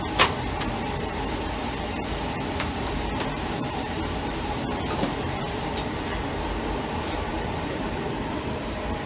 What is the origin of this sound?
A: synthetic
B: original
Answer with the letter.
A